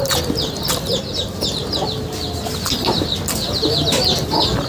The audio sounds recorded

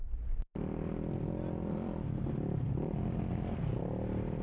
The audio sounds recorded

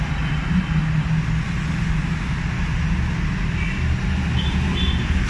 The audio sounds recorded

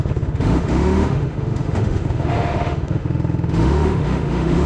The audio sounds remade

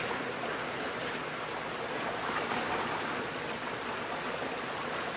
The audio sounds recorded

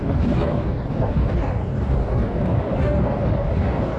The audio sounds remade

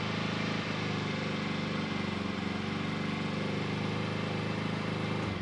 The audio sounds recorded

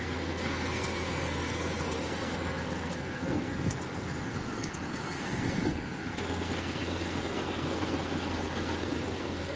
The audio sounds remade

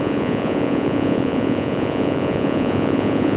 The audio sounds remade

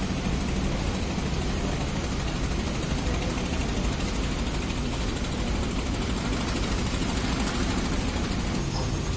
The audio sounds recorded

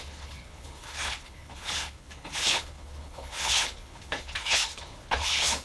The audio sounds remade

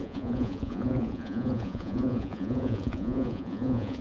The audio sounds remade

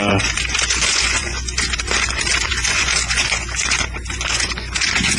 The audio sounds remade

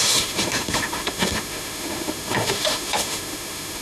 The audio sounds remade